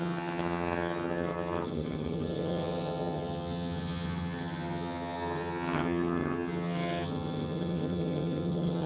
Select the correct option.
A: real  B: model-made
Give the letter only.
B